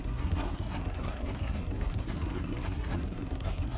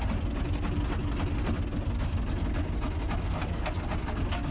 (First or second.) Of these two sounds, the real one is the second